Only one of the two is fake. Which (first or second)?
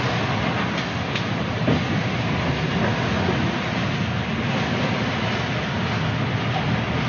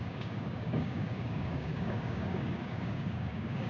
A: second